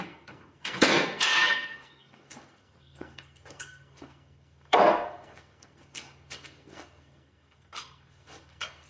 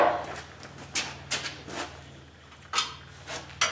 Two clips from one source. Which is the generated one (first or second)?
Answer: first